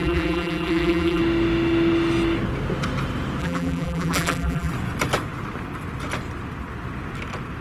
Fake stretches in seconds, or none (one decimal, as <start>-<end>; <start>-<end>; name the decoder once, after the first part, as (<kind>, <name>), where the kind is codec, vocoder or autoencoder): 0.0-1.2 (vocoder, BigVGAN v2); 3.4-4.7